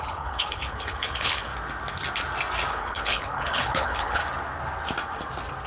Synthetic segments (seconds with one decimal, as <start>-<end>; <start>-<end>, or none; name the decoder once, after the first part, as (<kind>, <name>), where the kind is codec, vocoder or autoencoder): 0.0-1.5 (codec, HILCodec); 2.7-4.2

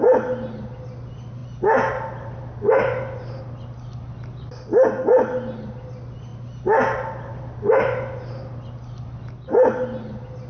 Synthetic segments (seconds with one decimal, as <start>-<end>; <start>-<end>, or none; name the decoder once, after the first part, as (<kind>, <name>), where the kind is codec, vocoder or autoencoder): none